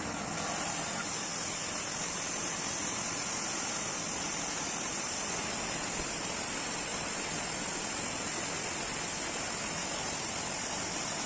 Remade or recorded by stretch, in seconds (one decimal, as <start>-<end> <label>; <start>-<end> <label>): 0.0-11.3 recorded